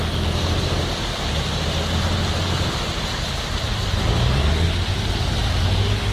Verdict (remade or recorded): recorded